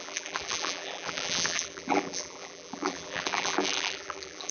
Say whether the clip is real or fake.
fake